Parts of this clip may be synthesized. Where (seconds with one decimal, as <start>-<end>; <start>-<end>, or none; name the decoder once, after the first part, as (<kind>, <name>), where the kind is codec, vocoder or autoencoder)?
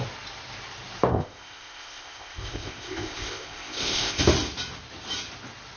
1.1-4.2 (codec, ZipCodec)